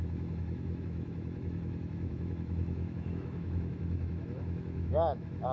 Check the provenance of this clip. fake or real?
fake